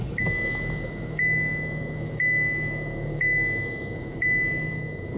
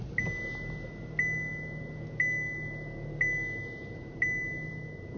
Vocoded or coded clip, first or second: first